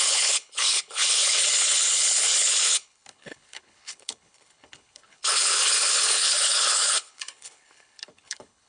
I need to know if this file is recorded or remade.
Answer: remade